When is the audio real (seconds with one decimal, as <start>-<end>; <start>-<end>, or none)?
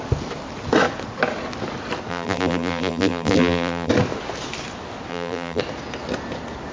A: 0.0-2.1; 3.9-5.1; 5.6-6.7